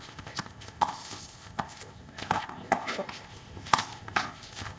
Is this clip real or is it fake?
fake